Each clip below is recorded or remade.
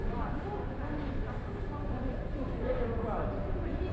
recorded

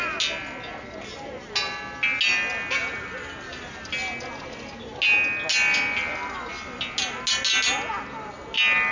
recorded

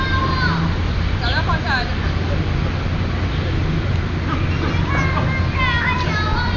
recorded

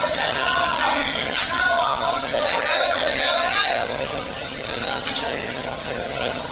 remade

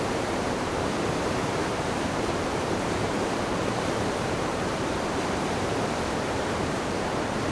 remade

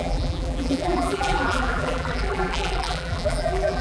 remade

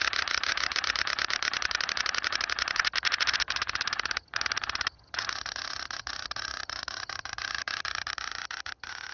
remade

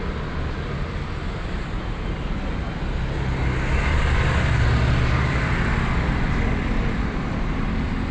recorded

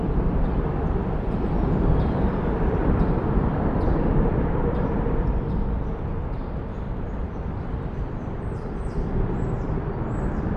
remade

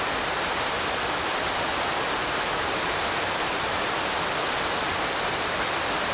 recorded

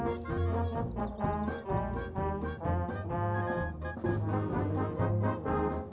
recorded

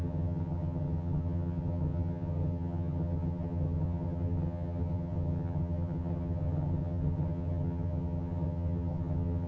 remade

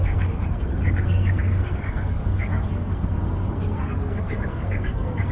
remade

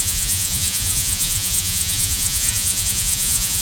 remade